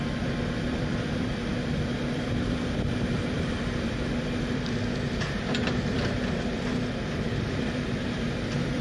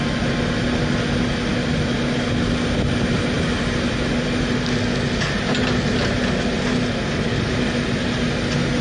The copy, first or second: first